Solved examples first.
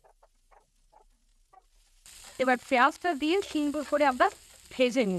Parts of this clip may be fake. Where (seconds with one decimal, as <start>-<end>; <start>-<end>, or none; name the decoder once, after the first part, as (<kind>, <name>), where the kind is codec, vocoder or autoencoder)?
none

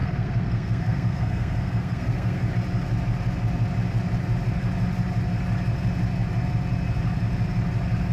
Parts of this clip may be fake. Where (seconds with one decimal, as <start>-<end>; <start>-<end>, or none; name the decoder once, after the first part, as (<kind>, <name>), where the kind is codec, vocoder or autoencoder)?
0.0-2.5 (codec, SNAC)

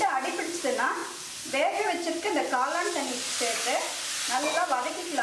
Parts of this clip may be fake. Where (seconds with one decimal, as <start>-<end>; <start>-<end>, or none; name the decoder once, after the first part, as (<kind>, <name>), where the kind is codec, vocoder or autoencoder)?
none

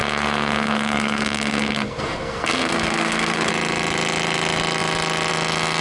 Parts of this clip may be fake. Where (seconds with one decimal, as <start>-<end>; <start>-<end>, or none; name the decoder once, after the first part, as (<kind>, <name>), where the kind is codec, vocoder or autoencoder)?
0.0-3.5 (codec, SNAC)

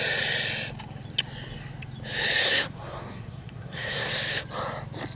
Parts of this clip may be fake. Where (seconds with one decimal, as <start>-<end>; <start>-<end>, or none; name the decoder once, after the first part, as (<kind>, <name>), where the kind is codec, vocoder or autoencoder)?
2.4-4.1 (codec, SNAC)

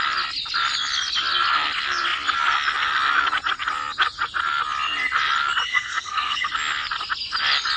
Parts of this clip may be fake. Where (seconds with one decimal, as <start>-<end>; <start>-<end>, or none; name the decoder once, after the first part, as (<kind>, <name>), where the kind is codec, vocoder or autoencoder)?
5.7-6.5 (codec, SNAC)

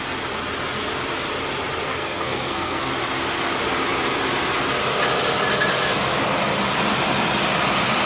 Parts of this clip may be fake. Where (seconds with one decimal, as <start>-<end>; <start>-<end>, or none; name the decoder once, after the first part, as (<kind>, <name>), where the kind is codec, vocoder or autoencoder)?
1.9-2.9 (codec, SNAC)

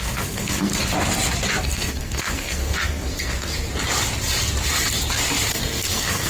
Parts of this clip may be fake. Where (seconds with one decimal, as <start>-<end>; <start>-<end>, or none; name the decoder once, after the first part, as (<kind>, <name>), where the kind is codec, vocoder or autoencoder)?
0.0-0.7 (codec, SNAC); 1.6-3.5; 5.5-6.3